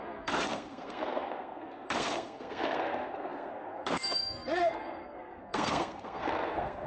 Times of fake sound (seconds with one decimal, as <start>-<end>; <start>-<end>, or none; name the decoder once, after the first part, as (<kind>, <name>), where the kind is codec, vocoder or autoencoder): 0.0-6.9 (codec, SNAC)